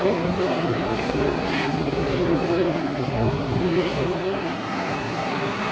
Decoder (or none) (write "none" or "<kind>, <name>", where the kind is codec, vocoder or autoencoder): codec, SNAC